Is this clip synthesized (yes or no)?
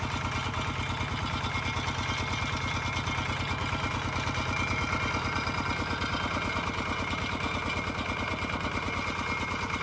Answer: no